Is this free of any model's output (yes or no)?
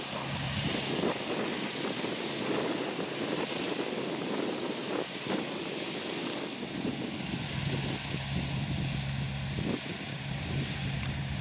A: yes